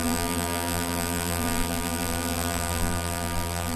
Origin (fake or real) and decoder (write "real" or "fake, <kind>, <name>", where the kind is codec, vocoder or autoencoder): fake, vocoder, BigVGAN v2